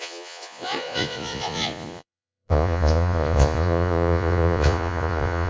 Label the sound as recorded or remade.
remade